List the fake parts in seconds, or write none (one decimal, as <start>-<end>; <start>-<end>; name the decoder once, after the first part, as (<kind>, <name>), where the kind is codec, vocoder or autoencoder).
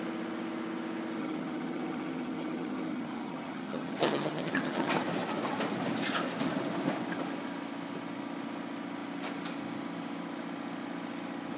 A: 1.2-4.9 (vocoder, HiFi-GAN)